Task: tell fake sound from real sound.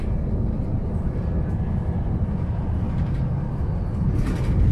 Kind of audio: real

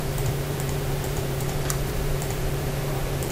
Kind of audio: fake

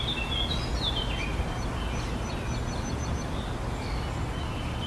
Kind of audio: real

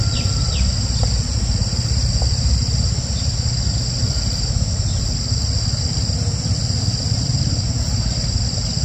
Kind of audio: real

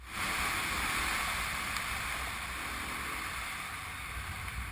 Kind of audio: real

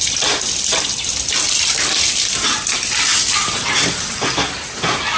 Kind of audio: real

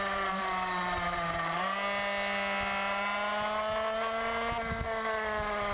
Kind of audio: real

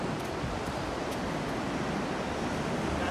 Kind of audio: real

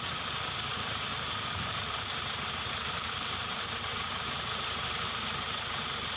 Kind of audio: fake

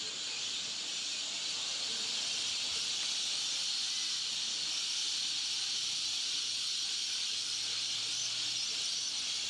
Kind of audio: real